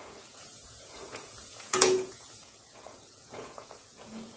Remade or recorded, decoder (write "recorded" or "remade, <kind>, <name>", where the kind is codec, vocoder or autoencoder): remade, vocoder, Vocos